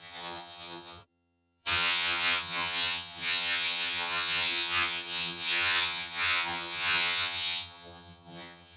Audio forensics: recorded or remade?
remade